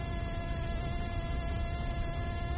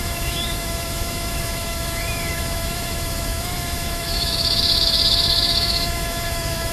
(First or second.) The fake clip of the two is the second